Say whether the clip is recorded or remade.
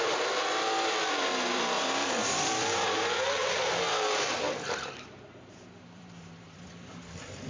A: remade